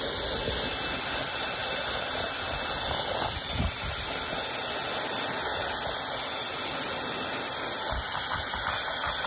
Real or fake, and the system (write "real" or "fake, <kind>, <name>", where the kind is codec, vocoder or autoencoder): real